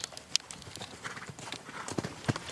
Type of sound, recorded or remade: recorded